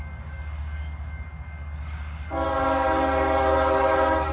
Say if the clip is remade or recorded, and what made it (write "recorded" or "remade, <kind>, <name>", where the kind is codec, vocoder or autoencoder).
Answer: remade, codec, DAC